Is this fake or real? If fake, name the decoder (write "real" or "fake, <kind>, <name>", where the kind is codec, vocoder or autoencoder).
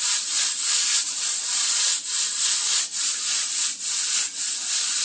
real